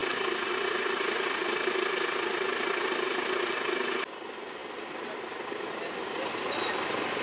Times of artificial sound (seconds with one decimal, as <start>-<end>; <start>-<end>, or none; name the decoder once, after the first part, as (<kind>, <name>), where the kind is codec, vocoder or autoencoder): none